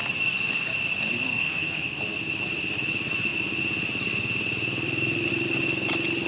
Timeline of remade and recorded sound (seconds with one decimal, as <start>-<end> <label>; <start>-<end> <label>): 0.0-1.3 recorded; 1.3-2.0 remade; 2.0-6.3 recorded